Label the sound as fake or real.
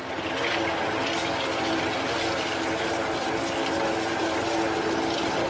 real